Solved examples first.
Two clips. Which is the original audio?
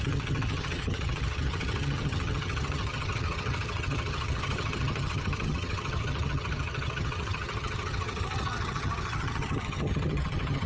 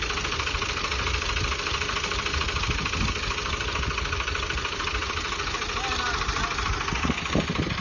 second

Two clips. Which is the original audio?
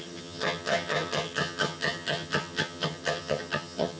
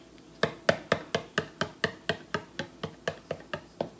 second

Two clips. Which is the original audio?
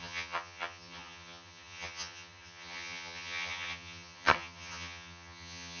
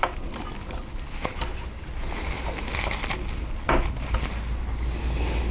second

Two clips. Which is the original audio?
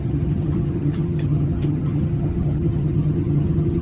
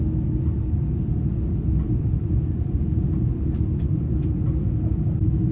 second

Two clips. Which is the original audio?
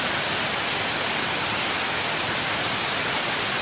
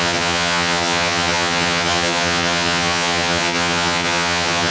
first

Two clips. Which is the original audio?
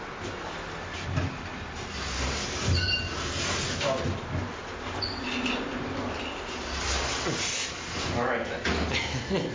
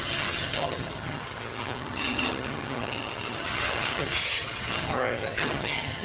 first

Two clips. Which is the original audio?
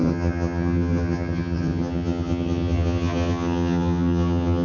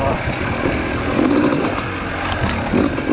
second